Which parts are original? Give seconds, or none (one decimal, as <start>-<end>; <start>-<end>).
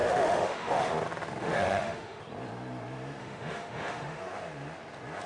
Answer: 0.9-1.4; 2.2-3.2; 4.2-5.3